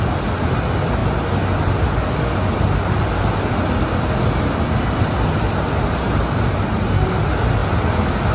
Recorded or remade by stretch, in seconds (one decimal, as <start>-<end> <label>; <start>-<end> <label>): 0.0-8.3 recorded